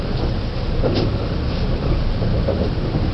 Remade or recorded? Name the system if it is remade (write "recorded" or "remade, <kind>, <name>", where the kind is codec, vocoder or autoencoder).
recorded